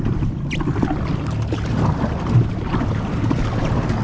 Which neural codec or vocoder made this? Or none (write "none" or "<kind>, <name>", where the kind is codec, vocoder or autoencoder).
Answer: none